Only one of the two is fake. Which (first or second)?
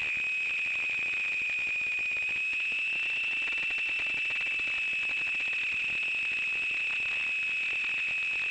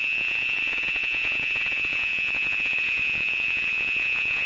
second